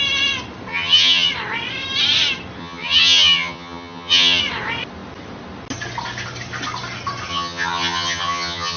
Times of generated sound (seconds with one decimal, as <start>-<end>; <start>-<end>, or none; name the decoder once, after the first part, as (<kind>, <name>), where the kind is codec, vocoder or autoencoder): 0.7-1.3 (vocoder, HiFi-GAN); 2.6-4.4; 7.3-8.8